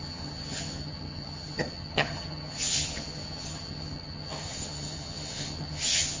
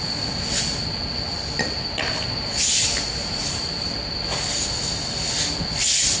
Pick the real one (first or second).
second